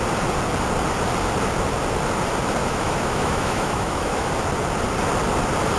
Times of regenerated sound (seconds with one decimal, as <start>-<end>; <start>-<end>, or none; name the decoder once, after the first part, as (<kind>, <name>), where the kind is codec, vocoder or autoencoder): 2.6-4.3 (autoencoder, DAC-VAE)

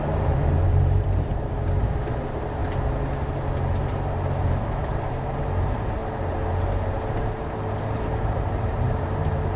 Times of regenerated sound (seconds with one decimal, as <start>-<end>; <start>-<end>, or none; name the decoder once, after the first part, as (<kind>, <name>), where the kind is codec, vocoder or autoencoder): 0.0-2.6 (vocoder, BigVGAN v2); 3.8-6.0; 7.1-9.6

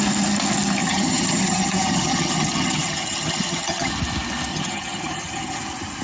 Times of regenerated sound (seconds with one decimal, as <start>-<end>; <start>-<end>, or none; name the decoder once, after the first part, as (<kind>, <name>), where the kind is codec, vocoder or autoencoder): 0.8-3.9 (vocoder, HiFi-GAN); 4.5-5.6